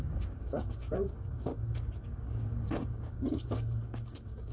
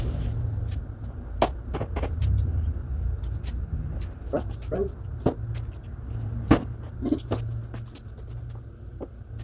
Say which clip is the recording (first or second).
second